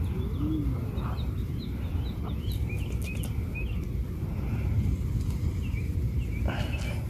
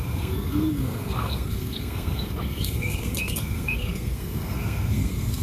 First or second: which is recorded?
first